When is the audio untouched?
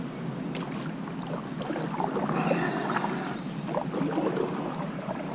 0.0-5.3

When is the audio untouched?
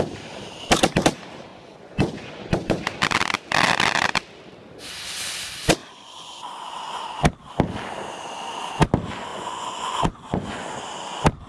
0.0-1.5; 2.8-5.8; 7.0-9.3; 10.8-11.5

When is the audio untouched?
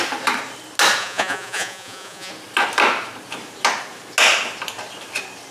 0.0-1.0; 2.3-5.5